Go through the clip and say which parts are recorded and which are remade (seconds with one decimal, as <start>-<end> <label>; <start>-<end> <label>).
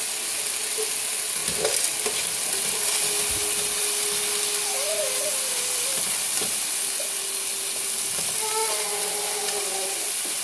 0.0-10.4 recorded